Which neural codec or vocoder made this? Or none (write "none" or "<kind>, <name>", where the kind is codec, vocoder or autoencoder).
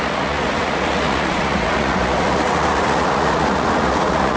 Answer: vocoder, Vocos